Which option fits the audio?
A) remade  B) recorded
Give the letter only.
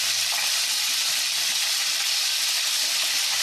B